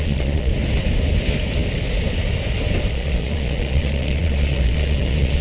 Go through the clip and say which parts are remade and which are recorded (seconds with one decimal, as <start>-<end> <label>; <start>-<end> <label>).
0.0-0.5 remade; 0.5-2.9 recorded; 2.9-5.4 remade